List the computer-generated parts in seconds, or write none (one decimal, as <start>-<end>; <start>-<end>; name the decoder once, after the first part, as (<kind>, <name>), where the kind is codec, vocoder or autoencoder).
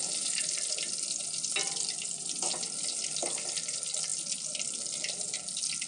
none